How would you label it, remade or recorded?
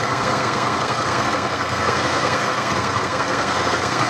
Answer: remade